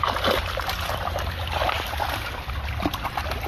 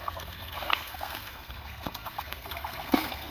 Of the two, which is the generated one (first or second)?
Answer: second